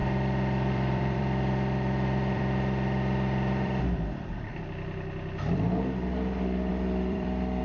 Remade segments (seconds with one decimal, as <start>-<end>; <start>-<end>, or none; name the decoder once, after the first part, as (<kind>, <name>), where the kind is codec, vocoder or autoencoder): 0.0-4.6 (vocoder, BigVGAN v2); 6.7-7.6